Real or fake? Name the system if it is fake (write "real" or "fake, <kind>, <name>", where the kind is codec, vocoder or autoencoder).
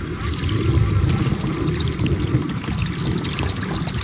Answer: real